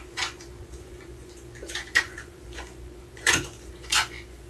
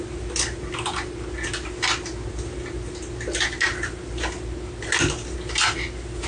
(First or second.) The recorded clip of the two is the second